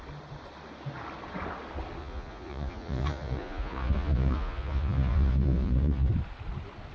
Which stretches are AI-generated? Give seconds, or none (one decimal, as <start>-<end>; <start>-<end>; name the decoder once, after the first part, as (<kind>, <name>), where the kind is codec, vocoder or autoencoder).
2.0-6.1 (vocoder, Vocos)